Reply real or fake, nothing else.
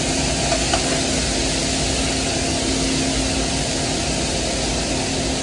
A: real